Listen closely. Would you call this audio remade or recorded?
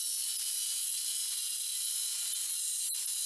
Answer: recorded